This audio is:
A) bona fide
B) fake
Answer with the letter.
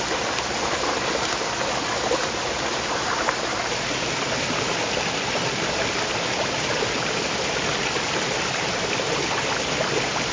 A